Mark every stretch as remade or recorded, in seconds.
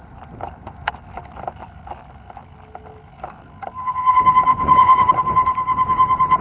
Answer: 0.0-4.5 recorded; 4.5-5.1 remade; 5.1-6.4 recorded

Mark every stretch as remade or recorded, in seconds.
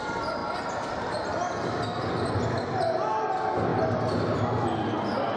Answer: 0.0-5.4 recorded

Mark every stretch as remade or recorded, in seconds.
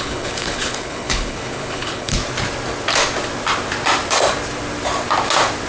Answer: 0.0-2.2 remade; 2.2-5.7 recorded